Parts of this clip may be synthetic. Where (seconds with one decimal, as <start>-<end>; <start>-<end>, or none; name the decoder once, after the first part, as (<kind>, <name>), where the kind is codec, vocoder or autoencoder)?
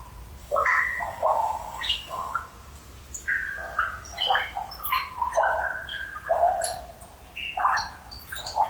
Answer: 0.4-2.4 (codec, DAC)